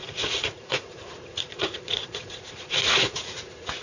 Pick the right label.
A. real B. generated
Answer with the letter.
B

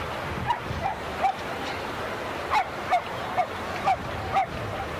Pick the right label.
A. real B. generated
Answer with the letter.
A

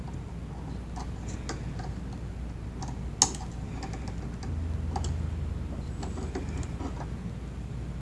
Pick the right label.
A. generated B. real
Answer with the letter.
B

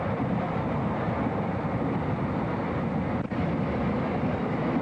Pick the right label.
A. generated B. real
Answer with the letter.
B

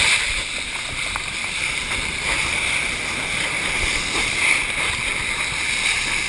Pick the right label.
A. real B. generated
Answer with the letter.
A